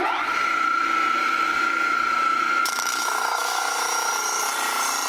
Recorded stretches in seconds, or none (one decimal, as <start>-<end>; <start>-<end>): 0.0-1.2; 4.1-5.1